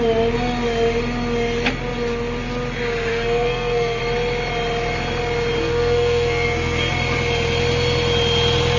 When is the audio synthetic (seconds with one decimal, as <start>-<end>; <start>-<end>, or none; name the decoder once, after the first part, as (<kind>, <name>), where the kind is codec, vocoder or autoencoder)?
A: 3.1-4.0 (codec, SNAC); 5.6-6.9